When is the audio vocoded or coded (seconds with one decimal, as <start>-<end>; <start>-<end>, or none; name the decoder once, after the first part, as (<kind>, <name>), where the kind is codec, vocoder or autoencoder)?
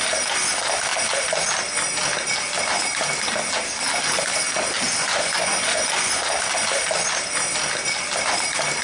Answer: 5.0-6.2 (vocoder, Vocos)